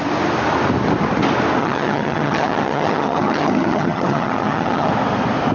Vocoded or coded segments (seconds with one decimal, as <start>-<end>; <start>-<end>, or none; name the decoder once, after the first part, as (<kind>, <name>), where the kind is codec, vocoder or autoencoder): 1.6-4.9 (vocoder, HiFi-GAN)